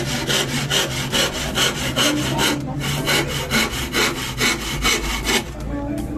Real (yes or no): yes